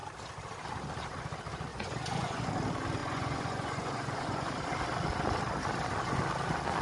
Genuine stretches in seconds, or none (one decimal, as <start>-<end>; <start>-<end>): 0.0-1.7; 2.5-3.0; 4.5-6.8

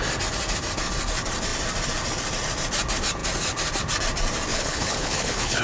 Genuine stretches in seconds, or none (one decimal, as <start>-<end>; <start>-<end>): 0.0-4.5

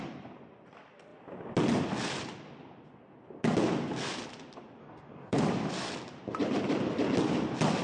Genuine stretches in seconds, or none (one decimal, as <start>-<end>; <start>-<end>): 0.0-4.8; 5.4-7.8

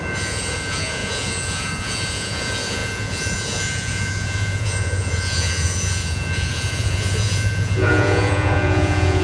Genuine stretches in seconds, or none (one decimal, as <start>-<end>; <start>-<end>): none

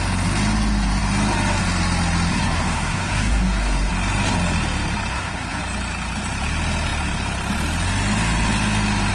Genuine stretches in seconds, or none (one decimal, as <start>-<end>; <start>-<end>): 0.0-2.3; 3.9-5.1; 5.6-9.1